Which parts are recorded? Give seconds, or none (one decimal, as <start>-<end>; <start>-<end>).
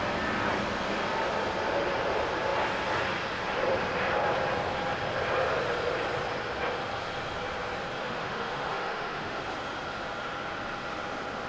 0.0-8.0; 9.4-11.5